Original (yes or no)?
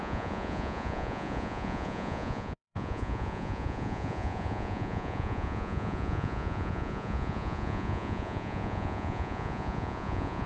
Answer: no